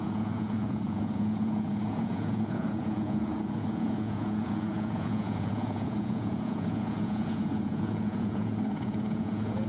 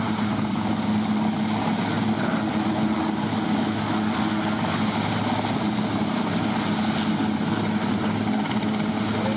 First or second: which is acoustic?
second